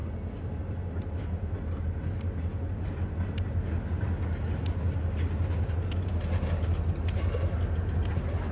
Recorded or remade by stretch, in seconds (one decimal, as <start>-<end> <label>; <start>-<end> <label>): 0.0-8.5 recorded